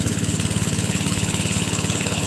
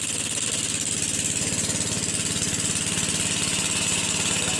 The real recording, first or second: second